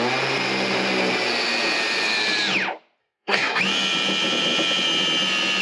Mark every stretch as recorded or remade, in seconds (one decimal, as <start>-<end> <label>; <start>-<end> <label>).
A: 0.0-3.0 recorded; 3.0-3.6 remade; 3.6-5.6 recorded